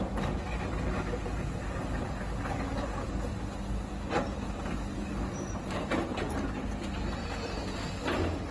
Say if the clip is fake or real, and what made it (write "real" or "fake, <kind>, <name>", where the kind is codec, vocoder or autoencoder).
real